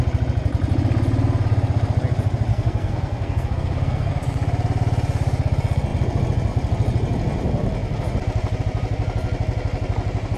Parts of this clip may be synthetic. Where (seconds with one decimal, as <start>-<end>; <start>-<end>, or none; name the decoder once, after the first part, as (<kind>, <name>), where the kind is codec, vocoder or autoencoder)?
2.5-4.1 (codec, SNAC)